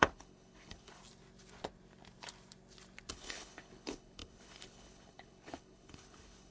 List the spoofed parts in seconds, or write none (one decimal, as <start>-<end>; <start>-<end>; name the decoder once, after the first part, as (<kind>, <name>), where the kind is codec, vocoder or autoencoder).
0.0-1.0 (codec, HILCodec); 3.1-6.5